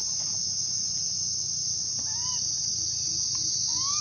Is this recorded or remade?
recorded